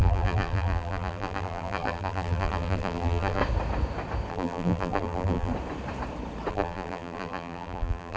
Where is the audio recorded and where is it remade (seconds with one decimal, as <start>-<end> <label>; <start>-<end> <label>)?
0.0-3.4 remade; 3.4-4.3 recorded; 4.3-5.5 remade; 5.5-6.5 recorded; 6.5-8.2 remade